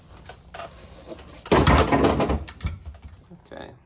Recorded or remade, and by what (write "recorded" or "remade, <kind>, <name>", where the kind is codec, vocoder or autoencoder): recorded